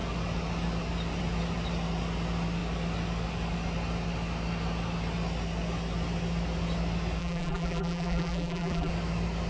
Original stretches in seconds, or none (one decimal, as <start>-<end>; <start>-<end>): 0.0-7.2; 8.9-9.5